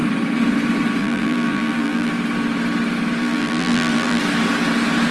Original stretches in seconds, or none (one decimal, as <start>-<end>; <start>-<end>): 0.0-1.0; 2.1-3.2; 4.2-5.1